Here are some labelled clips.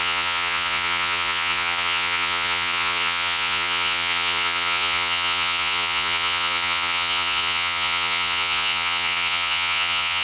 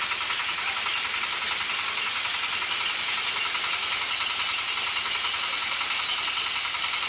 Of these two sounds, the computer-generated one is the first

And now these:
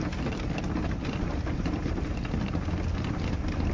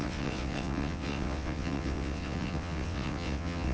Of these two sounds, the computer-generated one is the second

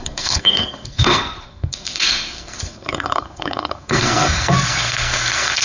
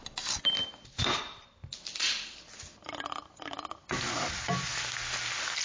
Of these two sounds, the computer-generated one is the first